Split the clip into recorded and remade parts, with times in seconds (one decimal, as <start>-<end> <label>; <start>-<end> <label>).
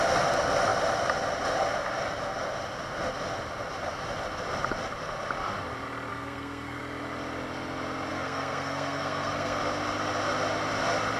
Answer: 0.0-6.1 recorded; 6.1-6.8 remade; 6.8-8.1 recorded; 8.1-9.6 remade; 9.6-11.2 recorded